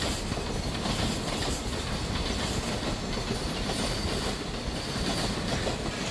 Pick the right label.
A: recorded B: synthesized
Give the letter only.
A